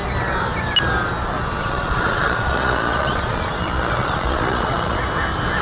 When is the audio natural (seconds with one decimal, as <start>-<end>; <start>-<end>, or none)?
0.0-1.6; 5.0-5.6